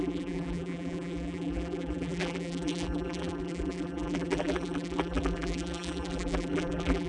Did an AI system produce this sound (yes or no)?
yes